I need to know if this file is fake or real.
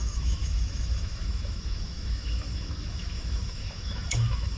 fake